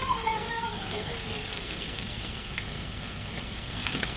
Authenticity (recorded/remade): remade